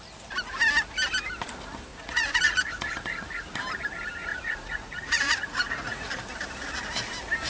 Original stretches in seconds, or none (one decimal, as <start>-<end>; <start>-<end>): 0.0-1.9; 2.7-4.3; 6.1-7.5

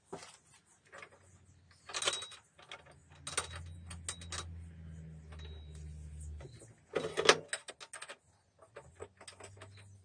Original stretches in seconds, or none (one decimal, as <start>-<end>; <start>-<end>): 0.0-10.0

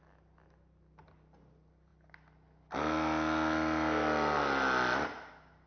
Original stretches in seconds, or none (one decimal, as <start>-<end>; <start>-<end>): 0.0-5.7

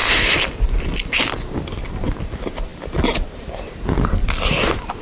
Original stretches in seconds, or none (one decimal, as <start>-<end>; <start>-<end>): 0.0-5.0

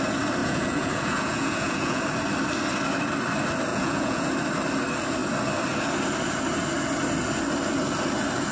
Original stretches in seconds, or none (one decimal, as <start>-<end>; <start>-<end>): 0.0-0.4; 2.0-3.7; 4.3-8.5

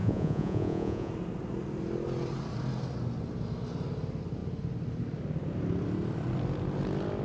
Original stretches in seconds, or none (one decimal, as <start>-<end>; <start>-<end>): 1.1-7.2

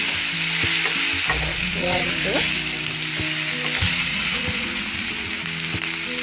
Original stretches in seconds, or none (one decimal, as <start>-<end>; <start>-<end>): 0.0-1.5; 2.2-3.8; 5.3-6.2

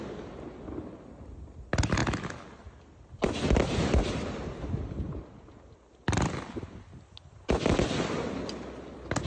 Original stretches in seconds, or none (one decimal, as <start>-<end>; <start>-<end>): 0.0-9.3